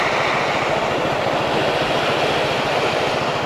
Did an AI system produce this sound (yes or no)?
no